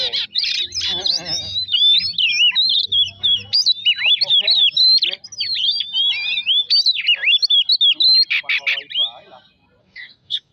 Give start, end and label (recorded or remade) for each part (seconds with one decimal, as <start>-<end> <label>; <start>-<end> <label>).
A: 0.0-9.8 recorded; 9.8-10.5 remade